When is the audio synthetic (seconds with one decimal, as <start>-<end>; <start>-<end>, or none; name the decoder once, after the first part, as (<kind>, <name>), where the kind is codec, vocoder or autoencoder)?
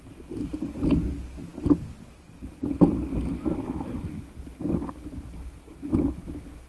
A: none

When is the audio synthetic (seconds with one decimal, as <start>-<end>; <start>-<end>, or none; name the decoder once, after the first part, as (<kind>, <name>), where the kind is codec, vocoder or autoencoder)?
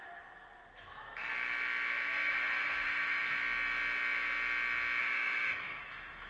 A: 0.0-0.6 (autoencoder, DAC-VAE); 2.6-3.2; 5.0-6.3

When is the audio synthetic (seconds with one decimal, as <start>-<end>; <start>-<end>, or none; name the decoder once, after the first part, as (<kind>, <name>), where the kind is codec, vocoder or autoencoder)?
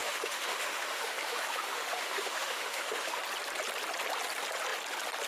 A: 0.0-3.2 (autoencoder, DAC-VAE)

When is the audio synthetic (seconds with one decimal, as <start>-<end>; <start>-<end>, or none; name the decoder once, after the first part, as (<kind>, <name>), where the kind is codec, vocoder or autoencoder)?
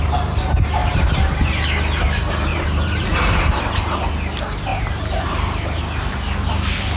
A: 0.8-1.6 (vocoder, BigVGAN v2); 2.5-3.6; 4.7-5.8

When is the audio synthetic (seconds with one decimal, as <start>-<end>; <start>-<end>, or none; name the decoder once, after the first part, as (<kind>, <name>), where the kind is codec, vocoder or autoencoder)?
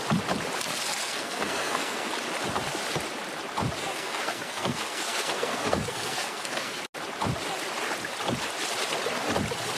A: 1.0-2.1 (codec, SNAC); 3.8-6.8